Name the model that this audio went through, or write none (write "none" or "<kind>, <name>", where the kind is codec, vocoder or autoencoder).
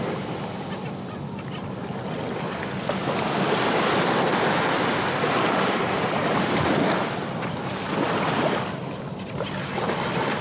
none